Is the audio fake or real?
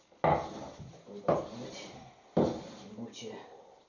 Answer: real